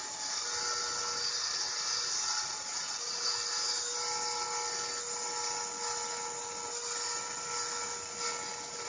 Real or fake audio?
real